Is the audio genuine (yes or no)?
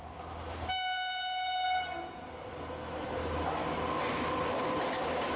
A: yes